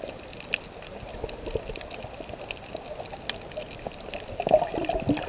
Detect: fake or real real